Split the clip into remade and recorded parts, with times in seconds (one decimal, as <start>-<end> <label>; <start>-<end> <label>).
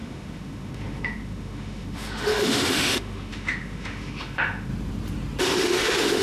0.0-4.7 remade; 4.7-5.4 recorded; 5.4-6.2 remade